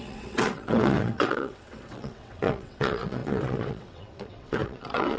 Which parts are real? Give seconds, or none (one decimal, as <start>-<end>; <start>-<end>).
none